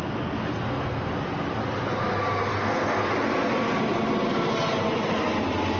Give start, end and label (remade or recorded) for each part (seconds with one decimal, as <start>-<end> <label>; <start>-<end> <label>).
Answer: 0.0-0.5 recorded; 0.5-1.1 remade; 1.1-2.5 recorded; 2.5-3.1 remade; 3.1-5.8 recorded